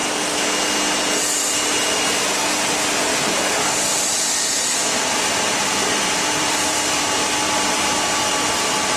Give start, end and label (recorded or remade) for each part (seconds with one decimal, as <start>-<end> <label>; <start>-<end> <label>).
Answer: 0.0-3.9 recorded; 3.9-9.0 remade